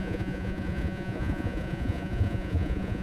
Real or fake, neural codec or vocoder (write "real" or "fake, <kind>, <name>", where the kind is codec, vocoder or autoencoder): fake, vocoder, Vocos